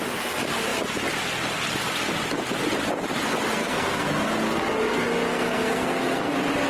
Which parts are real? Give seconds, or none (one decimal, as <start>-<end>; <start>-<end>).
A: 0.0-3.5; 4.1-5.3; 6.3-6.7